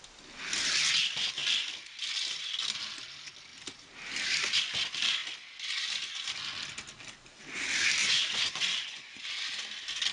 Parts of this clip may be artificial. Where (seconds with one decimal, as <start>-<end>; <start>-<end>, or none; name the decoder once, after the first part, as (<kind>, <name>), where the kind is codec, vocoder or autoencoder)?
8.0-9.2 (vocoder, Vocos)